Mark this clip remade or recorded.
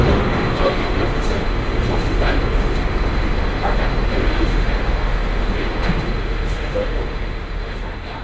remade